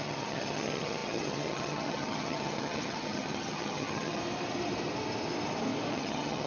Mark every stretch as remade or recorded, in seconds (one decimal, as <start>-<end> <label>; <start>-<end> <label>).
0.0-4.2 remade; 4.2-5.9 recorded; 5.9-6.5 remade